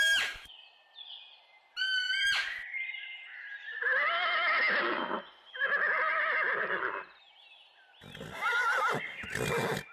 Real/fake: real